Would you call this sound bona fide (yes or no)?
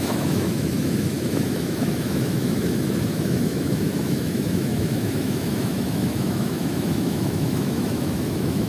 no